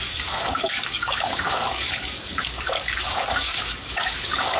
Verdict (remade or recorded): remade